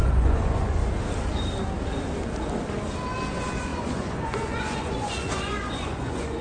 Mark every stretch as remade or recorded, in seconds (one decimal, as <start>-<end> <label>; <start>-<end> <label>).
0.0-0.8 remade; 0.8-3.3 recorded; 3.3-6.4 remade